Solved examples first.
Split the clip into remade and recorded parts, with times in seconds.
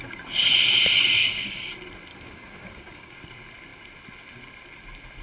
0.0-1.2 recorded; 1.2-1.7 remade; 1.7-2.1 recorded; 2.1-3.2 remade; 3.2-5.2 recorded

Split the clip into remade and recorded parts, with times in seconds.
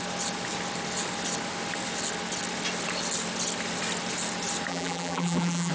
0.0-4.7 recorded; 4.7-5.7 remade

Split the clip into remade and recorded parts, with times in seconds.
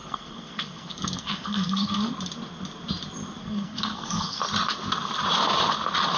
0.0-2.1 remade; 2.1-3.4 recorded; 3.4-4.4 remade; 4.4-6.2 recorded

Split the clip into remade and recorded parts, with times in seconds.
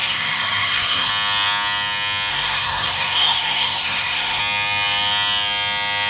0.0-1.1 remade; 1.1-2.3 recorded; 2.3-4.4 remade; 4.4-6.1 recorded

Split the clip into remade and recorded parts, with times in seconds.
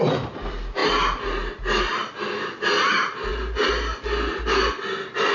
0.0-5.3 recorded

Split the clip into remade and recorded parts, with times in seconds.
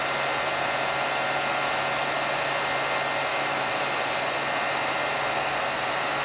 0.0-3.3 recorded; 3.3-3.8 remade; 3.8-6.2 recorded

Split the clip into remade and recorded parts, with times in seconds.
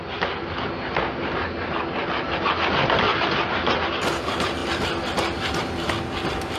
0.0-6.6 recorded